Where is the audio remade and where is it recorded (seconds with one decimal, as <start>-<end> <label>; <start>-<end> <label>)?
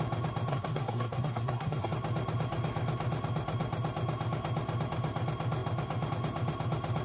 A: 0.0-0.5 recorded; 0.5-1.9 remade; 1.9-7.0 recorded